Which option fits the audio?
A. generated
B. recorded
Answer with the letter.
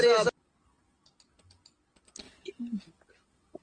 B